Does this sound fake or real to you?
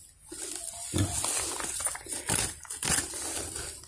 real